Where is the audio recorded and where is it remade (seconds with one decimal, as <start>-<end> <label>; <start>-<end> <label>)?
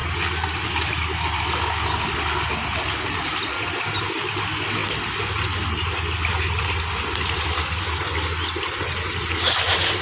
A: 0.0-10.0 recorded